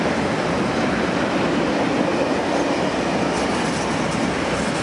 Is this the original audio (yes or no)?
yes